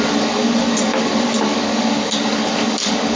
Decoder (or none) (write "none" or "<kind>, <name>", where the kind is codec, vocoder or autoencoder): codec, DAC